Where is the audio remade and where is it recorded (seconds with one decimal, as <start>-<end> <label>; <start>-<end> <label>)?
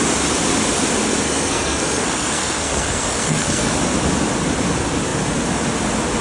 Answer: 0.0-1.2 recorded; 1.2-3.7 remade; 3.7-6.2 recorded